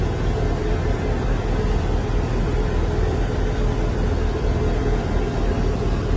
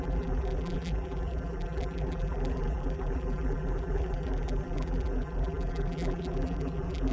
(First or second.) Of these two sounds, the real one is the first